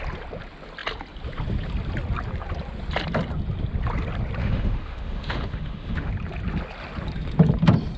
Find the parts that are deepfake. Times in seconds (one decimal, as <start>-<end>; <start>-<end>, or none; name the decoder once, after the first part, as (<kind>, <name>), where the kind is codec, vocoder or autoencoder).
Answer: 4.4-6.1 (autoencoder, DAC-VAE)